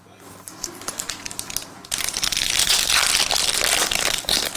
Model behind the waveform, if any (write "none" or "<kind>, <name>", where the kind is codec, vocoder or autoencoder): none